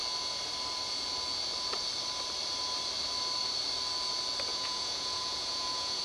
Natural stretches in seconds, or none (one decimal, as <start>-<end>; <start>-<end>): 0.0-4.5